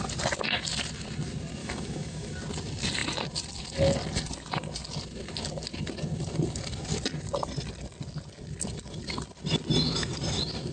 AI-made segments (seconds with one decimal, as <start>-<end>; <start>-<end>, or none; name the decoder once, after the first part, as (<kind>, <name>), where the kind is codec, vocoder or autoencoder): 1.6-2.3 (autoencoder, DAC-VAE)